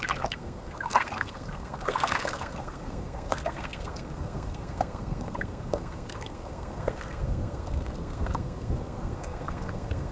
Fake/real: fake